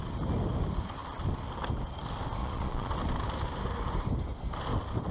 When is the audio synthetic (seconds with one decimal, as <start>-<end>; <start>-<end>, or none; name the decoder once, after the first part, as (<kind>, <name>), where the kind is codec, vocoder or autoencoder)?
2.4-2.9 (vocoder, Vocos)

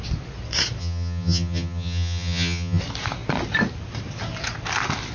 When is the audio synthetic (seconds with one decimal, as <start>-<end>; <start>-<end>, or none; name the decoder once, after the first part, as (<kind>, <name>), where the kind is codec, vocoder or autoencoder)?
0.8-2.8 (vocoder, HiFi-GAN)